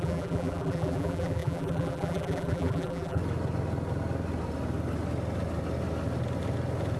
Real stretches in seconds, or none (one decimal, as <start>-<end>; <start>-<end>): 3.2-7.0